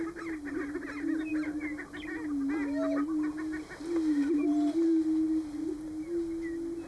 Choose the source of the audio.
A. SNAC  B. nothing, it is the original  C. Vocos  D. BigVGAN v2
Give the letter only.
B